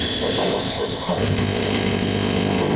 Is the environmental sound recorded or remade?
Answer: remade